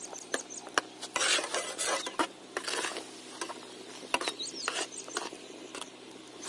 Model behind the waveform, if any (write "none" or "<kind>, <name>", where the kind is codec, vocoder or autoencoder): none